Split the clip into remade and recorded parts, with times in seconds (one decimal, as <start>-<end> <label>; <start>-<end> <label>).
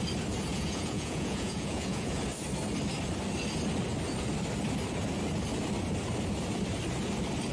0.0-0.5 recorded; 0.5-2.2 remade; 2.2-7.5 recorded